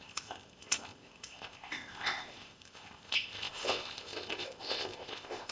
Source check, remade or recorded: remade